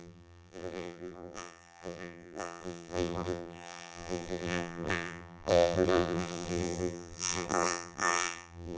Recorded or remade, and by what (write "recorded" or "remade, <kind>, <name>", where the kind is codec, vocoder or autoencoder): remade, vocoder, BigVGAN v2